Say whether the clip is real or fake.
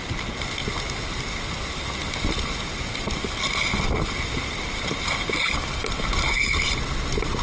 real